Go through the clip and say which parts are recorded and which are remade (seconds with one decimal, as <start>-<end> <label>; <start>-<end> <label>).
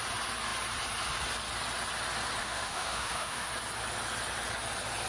0.0-2.4 recorded; 2.4-3.5 remade; 3.5-5.1 recorded